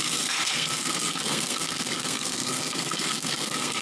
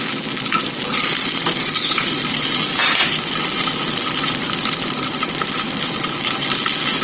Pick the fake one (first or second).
first